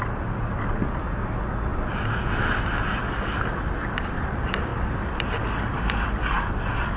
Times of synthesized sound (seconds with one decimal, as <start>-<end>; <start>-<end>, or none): none